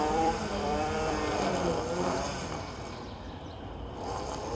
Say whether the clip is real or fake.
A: fake